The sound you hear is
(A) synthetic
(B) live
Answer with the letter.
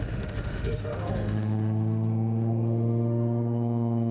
A